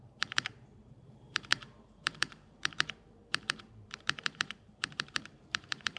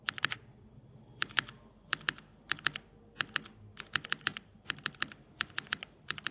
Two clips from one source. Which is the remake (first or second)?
first